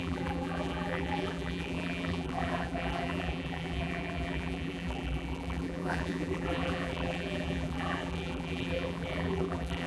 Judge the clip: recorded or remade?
remade